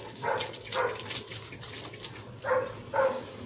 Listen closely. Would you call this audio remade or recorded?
recorded